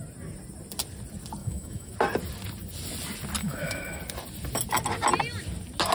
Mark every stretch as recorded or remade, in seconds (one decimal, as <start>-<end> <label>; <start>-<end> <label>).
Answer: 0.0-1.4 recorded; 1.4-1.9 remade; 1.9-3.4 recorded; 3.4-4.0 remade; 4.0-5.9 recorded